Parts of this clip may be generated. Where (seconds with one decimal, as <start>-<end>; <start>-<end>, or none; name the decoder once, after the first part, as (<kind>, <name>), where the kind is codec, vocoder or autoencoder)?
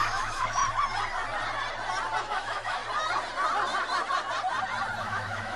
0.0-0.6 (autoencoder, DAC-VAE); 2.2-2.8; 5.0-5.6